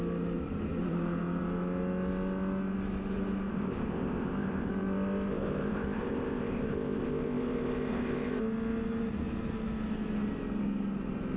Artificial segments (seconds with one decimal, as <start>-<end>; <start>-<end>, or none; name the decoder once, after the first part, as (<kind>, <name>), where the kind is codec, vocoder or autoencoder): 3.5-4.7 (codec, ZipCodec); 5.3-8.4